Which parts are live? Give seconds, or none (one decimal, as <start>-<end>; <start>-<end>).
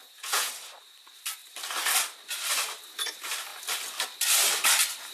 0.5-5.1